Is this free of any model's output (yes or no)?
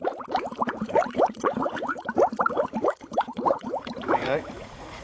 no